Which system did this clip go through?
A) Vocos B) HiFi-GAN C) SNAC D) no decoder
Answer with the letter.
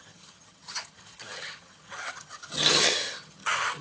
B